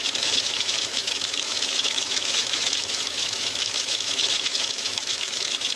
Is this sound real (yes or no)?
no